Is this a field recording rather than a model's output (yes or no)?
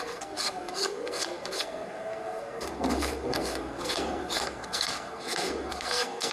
no